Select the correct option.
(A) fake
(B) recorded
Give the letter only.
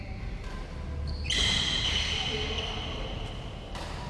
B